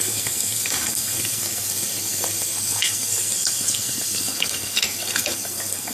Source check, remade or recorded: remade